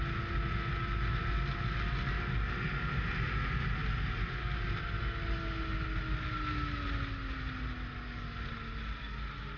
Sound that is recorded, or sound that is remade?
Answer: recorded